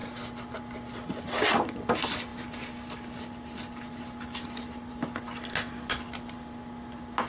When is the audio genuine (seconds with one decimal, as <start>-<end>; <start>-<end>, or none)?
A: 0.0-7.3